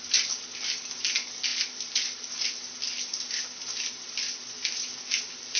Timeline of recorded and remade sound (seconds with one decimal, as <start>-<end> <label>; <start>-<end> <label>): 0.0-5.6 recorded